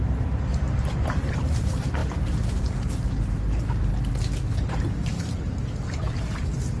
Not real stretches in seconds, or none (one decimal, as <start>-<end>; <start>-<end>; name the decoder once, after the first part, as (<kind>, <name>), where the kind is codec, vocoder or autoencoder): 0.0-3.9 (vocoder, BigVGAN v2); 4.5-6.8